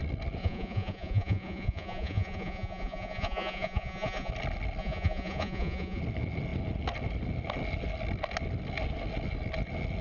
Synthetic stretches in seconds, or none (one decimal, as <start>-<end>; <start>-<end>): 0.4-4.3; 4.8-6.0